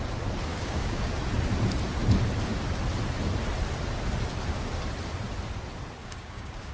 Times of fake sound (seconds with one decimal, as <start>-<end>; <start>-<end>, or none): 0.5-1.1; 6.0-6.7